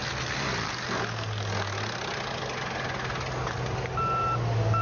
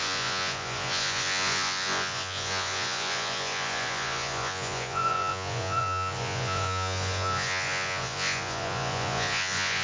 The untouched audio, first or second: first